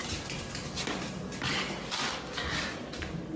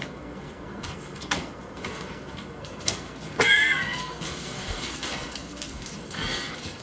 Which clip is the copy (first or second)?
second